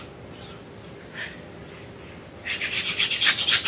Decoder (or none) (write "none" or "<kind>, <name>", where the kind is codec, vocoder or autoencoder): none